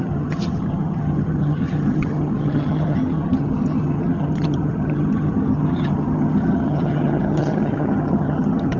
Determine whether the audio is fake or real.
fake